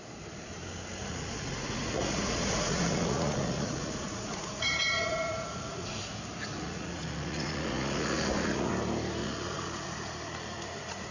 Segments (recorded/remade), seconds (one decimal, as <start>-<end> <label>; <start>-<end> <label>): 0.0-1.0 recorded; 1.0-6.0 remade; 6.0-6.5 recorded; 6.5-8.7 remade; 8.7-9.2 recorded; 9.2-11.1 remade